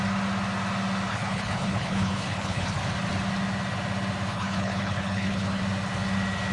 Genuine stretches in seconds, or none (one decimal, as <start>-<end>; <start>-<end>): 0.0-1.1; 2.8-4.3; 5.6-6.5